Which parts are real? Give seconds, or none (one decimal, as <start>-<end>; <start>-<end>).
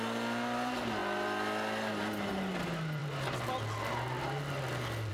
0.0-5.1